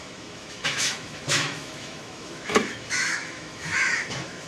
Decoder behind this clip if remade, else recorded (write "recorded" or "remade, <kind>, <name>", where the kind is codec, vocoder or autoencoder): remade, autoencoder, DAC-VAE